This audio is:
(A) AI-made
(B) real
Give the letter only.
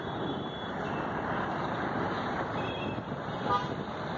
B